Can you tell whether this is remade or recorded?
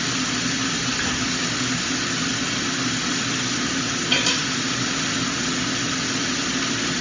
recorded